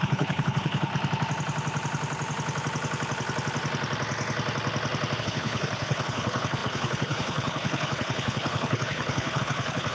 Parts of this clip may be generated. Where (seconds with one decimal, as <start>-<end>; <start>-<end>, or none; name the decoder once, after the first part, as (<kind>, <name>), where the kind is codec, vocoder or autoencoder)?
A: 0.0-0.9 (codec, HILCodec); 5.2-9.9